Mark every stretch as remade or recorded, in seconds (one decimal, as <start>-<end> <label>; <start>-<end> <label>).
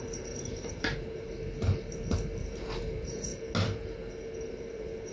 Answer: 0.0-3.3 remade; 3.3-4.5 recorded; 4.5-5.1 remade